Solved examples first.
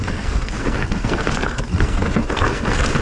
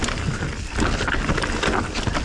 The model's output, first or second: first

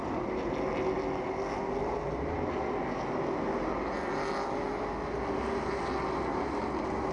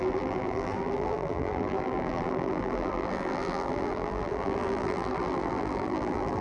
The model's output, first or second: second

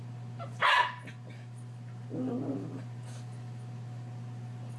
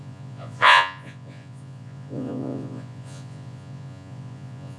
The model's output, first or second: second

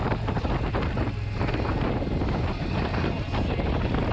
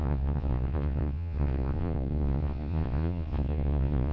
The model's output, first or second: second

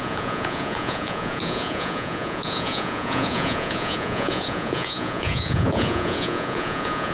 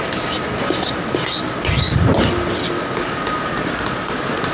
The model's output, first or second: first